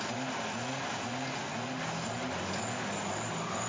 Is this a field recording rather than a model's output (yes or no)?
yes